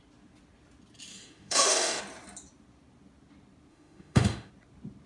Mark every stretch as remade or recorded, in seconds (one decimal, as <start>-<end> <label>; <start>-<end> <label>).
0.0-1.1 recorded; 1.1-2.0 remade; 2.0-3.7 recorded; 3.7-4.5 remade; 4.5-5.1 recorded